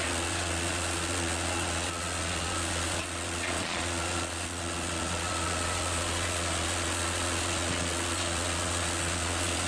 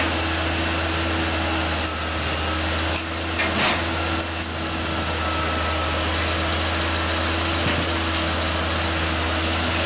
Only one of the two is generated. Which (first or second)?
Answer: first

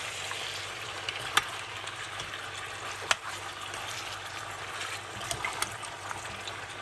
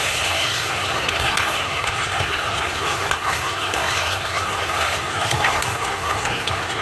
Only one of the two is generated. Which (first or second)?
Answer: second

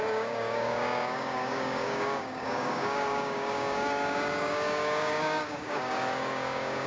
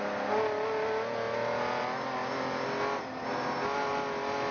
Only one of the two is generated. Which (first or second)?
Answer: first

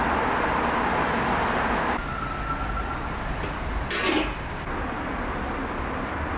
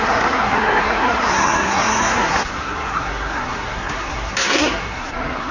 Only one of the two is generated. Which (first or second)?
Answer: second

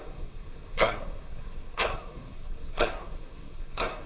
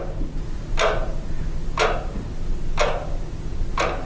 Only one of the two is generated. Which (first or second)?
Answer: first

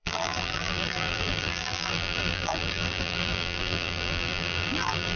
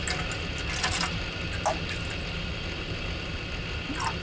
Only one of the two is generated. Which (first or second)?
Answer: first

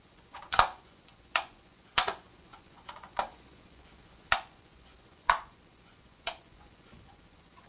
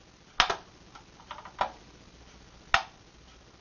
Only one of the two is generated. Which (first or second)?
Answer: first